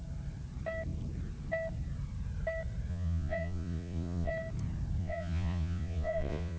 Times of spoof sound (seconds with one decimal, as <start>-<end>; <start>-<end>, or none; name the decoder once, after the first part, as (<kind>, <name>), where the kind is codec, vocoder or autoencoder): 2.9-4.3 (vocoder, Vocos); 5.0-6.6